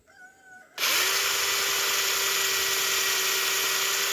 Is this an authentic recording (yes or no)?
yes